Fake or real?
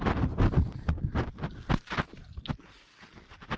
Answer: real